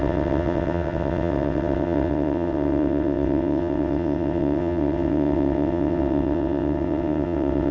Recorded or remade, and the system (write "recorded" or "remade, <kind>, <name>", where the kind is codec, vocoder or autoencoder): remade, vocoder, WaveNeXt